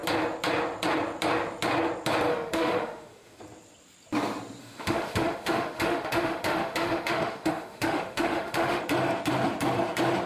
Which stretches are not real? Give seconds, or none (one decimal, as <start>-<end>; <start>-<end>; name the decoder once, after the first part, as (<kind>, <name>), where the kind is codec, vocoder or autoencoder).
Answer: 2.3-3.4 (autoencoder, DAC-VAE); 4.6-8.8